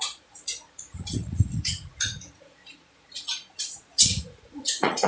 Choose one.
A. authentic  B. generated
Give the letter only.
B